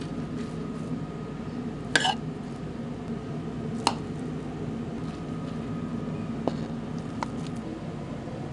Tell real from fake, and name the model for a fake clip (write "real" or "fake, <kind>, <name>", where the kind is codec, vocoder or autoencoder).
real